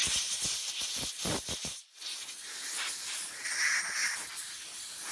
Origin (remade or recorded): recorded